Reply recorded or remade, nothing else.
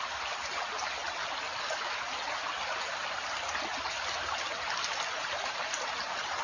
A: recorded